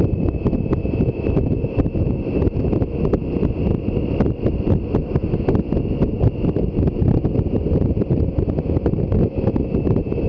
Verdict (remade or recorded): recorded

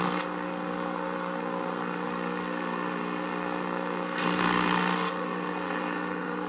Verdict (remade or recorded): remade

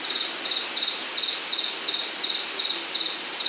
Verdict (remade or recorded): recorded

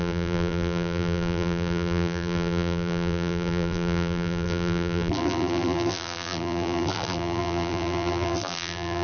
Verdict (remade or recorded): remade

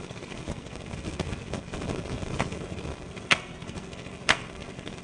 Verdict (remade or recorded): remade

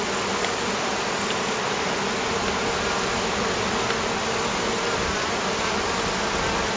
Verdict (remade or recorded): recorded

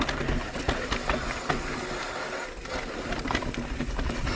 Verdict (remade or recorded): recorded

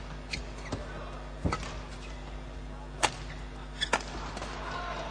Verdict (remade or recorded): recorded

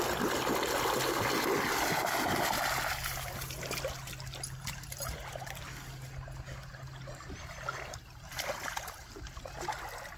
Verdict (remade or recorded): recorded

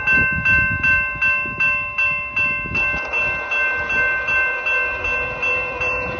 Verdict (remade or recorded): recorded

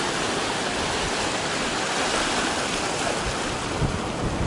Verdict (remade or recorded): recorded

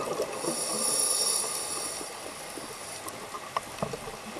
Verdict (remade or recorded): recorded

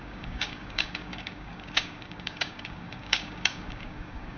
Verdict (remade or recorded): remade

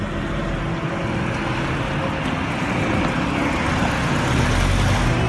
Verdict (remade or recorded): recorded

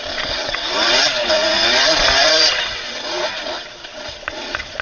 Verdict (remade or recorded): remade